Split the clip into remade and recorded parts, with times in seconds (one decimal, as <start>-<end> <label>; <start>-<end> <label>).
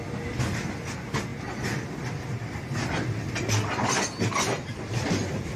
0.0-5.6 recorded